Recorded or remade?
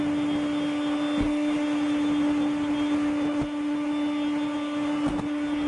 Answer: recorded